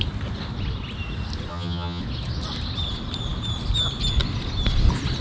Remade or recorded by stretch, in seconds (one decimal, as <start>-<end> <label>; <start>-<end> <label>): 0.0-1.5 recorded; 1.5-2.0 remade; 2.0-5.2 recorded